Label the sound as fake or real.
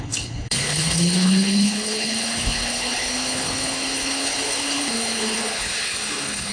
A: fake